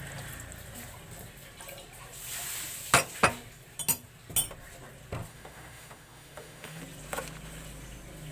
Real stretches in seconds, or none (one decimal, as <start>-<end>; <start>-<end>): 0.0-5.3; 6.8-8.3